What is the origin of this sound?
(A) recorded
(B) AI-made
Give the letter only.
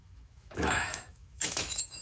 B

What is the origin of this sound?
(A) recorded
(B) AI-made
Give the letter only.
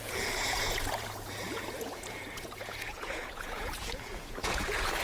B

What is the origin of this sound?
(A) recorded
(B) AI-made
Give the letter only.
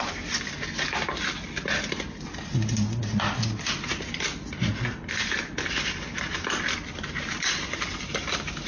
A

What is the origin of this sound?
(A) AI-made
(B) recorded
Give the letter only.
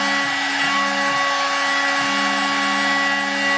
B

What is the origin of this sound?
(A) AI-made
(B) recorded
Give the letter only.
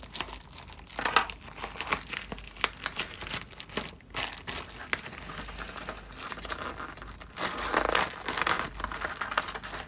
B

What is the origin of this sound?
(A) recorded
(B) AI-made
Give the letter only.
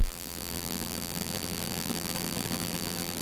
B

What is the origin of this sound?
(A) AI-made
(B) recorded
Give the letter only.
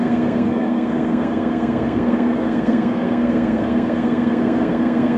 A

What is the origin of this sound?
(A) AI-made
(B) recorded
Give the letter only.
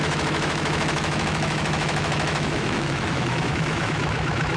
A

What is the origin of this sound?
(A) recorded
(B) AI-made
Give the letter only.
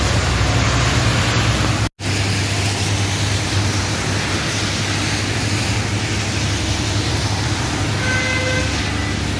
A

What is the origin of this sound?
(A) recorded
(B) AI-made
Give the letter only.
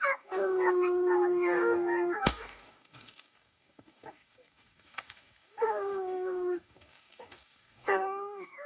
B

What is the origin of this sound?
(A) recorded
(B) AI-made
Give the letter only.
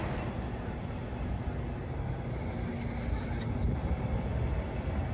A